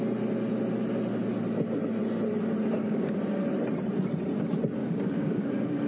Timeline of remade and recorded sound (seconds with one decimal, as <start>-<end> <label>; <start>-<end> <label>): 0.0-2.6 recorded; 2.6-3.2 remade; 3.2-4.8 recorded; 4.8-5.9 remade